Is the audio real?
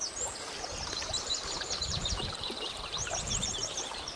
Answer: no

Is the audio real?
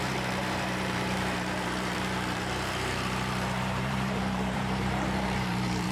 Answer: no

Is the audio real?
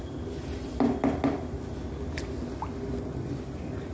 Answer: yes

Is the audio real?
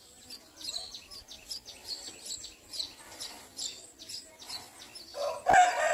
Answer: yes